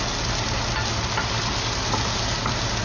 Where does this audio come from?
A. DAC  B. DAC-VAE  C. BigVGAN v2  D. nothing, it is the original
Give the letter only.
D